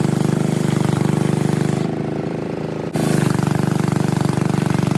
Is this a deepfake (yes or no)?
yes